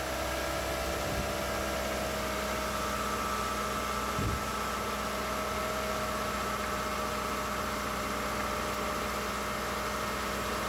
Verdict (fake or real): real